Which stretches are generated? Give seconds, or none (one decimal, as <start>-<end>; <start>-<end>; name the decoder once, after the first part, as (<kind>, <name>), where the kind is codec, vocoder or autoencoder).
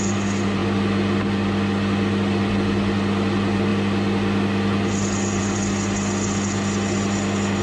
none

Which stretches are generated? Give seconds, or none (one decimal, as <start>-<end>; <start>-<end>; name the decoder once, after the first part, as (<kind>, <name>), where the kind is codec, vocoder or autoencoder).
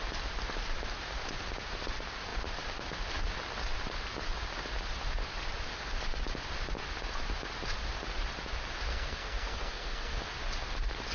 8.9-10.2 (codec, SNAC)